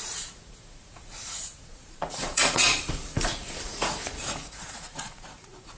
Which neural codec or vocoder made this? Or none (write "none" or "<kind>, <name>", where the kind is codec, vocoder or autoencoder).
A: vocoder, Vocos